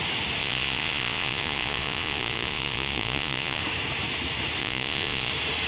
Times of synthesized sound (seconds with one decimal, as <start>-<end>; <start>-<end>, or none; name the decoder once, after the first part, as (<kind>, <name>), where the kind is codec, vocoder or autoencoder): 0.4-3.6 (vocoder, Vocos); 4.6-5.3